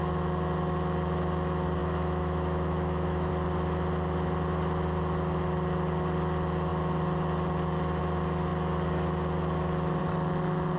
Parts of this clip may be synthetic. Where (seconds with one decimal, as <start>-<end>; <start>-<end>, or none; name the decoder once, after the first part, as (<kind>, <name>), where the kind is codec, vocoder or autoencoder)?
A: 1.8-3.3 (autoencoder, DAC-VAE)